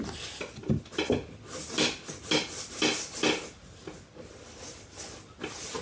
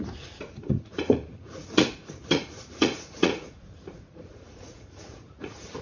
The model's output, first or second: second